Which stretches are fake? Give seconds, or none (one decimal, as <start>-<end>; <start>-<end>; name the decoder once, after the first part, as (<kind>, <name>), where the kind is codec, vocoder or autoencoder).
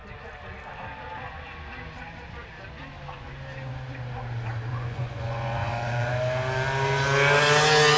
4.7-6.1 (vocoder, Vocos)